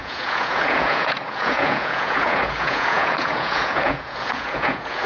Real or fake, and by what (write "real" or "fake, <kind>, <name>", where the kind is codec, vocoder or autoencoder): fake, vocoder, Vocos